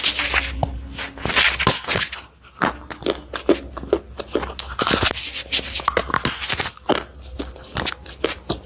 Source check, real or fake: real